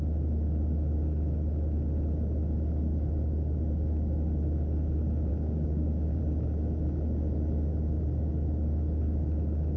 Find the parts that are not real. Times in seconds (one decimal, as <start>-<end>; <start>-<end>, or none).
5.3-6.2